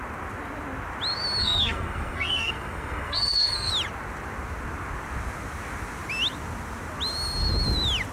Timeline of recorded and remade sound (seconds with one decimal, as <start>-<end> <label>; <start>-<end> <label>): 0.0-1.4 recorded; 1.4-3.7 remade; 3.7-8.1 recorded

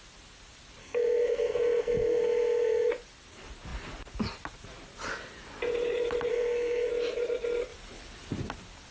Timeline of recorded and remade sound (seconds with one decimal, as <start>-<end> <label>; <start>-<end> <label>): 0.0-0.8 recorded; 0.8-2.9 remade; 2.9-6.3 recorded; 6.3-6.9 remade; 6.9-8.9 recorded

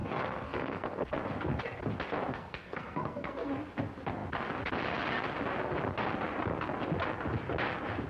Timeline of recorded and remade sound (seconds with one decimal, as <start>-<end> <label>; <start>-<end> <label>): 0.0-1.1 remade; 1.1-2.3 recorded; 2.3-3.5 remade; 3.5-8.1 recorded

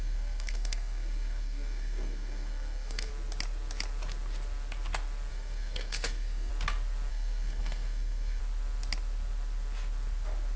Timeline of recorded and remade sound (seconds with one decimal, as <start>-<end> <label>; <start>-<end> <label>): 0.0-3.1 remade; 3.1-5.3 recorded; 5.3-6.5 remade; 6.5-7.1 recorded; 7.1-8.4 remade; 8.4-10.6 recorded

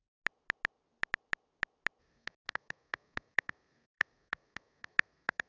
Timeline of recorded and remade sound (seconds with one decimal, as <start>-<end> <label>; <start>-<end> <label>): 0.0-2.0 recorded; 2.0-5.5 remade